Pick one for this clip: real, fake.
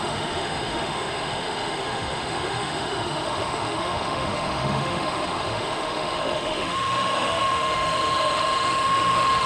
fake